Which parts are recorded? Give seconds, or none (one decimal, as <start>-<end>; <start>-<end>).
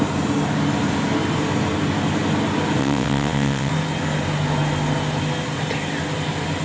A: 0.0-2.8; 3.7-6.6